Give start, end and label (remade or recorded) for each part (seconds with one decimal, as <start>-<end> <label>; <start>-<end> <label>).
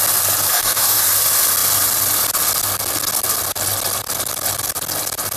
0.0-0.5 recorded; 0.5-1.0 remade; 1.0-5.4 recorded